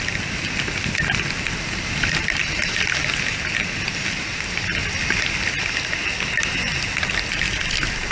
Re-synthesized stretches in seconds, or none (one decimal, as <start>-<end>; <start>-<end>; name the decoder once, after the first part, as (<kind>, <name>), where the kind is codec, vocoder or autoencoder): none